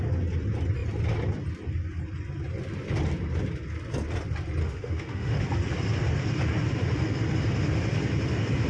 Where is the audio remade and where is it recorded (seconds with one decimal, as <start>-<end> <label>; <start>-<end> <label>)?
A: 0.0-4.6 recorded; 4.6-5.4 remade; 5.4-8.7 recorded